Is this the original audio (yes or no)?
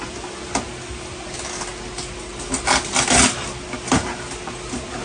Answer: yes